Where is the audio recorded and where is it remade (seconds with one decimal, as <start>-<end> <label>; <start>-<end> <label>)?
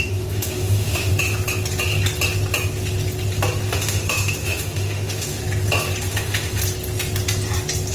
0.0-1.1 remade; 1.1-3.7 recorded; 3.7-5.4 remade; 5.4-6.1 recorded; 6.1-6.6 remade; 6.6-7.9 recorded